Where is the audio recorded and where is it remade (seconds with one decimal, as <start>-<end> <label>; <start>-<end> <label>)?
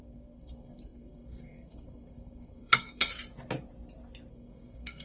0.0-3.1 remade; 3.1-4.3 recorded; 4.3-5.0 remade